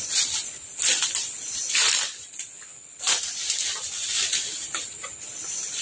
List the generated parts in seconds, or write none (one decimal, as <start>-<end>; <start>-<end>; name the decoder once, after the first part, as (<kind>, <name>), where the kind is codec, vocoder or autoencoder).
none